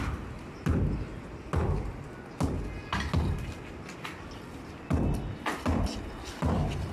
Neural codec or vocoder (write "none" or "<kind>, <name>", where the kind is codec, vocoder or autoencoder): none